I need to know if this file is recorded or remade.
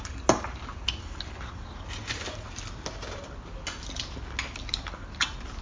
recorded